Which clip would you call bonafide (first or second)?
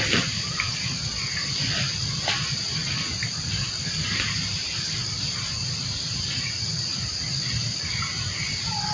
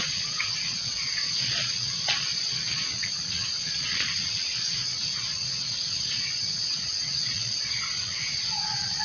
first